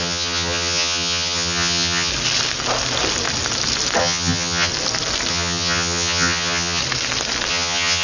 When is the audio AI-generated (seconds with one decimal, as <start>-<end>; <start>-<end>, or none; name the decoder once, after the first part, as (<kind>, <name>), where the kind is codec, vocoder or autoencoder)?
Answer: 0.0-2.1 (vocoder, HiFi-GAN); 4.0-4.7; 5.3-6.8; 7.5-8.0